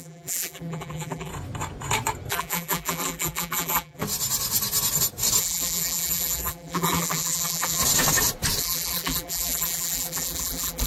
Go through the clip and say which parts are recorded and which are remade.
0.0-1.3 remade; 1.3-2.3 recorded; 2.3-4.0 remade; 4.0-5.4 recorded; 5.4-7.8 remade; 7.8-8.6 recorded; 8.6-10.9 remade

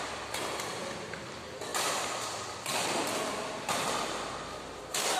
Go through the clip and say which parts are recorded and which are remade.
0.0-5.2 recorded

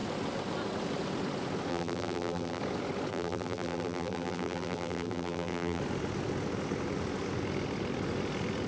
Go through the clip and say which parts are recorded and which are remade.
0.0-1.7 recorded; 1.7-2.6 remade; 2.6-3.1 recorded; 3.1-5.8 remade; 5.8-8.7 recorded

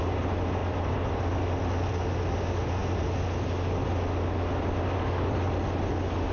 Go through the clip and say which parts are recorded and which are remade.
0.0-0.6 recorded; 0.6-1.6 remade; 1.6-6.3 recorded